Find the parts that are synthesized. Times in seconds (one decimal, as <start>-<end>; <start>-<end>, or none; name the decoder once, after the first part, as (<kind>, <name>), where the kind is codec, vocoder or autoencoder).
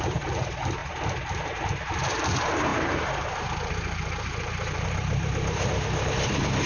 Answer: 0.0-0.8 (vocoder, BigVGAN v2); 1.4-6.7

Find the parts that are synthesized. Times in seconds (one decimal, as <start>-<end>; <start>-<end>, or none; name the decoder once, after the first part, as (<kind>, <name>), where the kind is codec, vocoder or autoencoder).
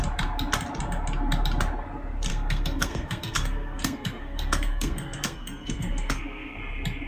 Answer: 2.3-6.6 (codec, SNAC)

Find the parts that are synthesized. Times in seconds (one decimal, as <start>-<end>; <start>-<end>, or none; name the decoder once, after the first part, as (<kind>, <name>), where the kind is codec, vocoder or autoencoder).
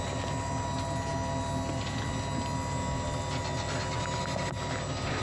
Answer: none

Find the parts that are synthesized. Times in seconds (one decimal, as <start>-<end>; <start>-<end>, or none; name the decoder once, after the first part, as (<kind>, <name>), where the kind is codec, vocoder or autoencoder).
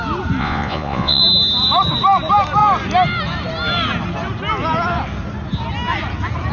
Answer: 0.4-1.2 (vocoder, Vocos)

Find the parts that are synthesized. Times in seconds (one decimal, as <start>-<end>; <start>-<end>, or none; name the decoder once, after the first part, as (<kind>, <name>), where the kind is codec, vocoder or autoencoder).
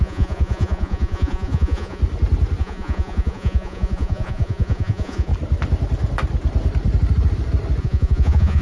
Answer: 0.0-2.0 (vocoder, Vocos); 2.6-5.3; 7.8-8.6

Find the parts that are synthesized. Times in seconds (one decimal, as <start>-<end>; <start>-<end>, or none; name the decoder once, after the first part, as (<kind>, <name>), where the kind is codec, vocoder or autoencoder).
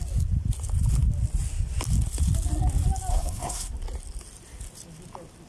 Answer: 3.1-3.7 (codec, SNAC)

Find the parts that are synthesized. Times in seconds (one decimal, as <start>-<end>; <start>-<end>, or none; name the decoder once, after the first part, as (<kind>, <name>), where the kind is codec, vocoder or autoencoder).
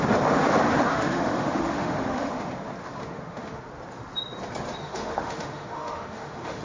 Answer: 0.9-2.5 (autoencoder, DAC-VAE); 3.0-3.7; 4.8-6.6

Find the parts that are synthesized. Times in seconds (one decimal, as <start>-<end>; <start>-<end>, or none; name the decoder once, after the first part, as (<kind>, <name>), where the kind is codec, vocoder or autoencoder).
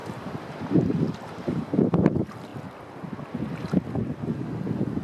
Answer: 0.0-1.6 (vocoder, BigVGAN v2)